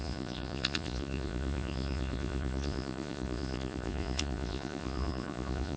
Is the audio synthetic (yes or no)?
yes